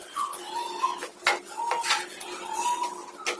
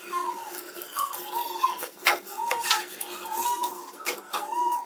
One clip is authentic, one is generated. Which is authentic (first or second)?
first